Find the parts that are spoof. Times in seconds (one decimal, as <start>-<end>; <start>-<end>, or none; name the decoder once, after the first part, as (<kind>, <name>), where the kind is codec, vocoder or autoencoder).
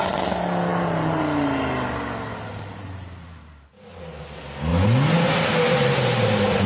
0.7-1.2 (vocoder, BigVGAN v2); 2.5-4.0; 4.7-6.7